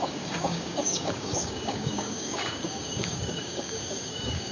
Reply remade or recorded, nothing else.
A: remade